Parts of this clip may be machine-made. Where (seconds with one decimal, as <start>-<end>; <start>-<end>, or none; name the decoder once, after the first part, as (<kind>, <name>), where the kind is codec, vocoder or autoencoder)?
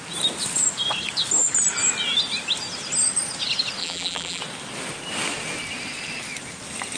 3.8-4.4 (vocoder, BigVGAN v2)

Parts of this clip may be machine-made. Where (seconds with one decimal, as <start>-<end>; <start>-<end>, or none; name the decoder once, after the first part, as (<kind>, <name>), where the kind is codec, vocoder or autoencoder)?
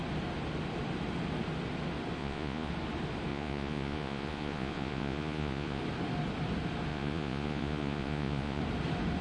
2.2-2.7 (vocoder, Vocos); 3.3-5.8; 6.9-8.6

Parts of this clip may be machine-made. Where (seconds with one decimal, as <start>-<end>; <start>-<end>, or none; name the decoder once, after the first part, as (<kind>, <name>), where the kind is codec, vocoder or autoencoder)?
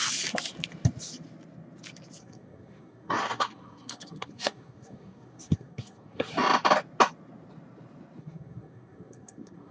2.2-6.3 (codec, SNAC); 8.2-9.7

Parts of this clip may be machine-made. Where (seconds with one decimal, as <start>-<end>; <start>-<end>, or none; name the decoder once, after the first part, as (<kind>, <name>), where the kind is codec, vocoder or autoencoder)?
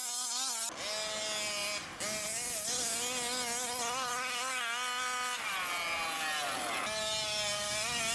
none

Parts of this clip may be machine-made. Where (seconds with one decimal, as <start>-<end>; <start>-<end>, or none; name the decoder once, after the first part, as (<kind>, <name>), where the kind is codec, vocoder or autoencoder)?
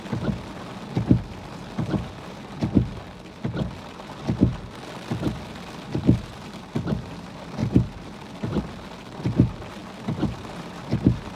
none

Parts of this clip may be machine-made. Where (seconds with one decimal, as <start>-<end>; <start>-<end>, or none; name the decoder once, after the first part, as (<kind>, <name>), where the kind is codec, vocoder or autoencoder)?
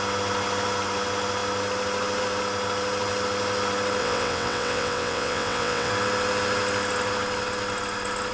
4.0-5.9 (vocoder, WaveNeXt)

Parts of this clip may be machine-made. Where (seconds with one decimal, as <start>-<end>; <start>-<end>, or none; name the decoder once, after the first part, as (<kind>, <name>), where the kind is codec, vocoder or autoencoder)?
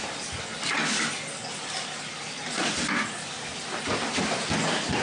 none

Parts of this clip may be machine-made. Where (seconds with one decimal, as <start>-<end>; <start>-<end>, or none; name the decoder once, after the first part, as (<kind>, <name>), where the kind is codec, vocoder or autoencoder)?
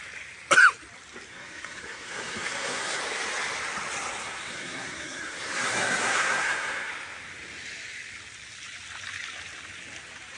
1.3-3.0 (codec, SNAC); 4.2-6.9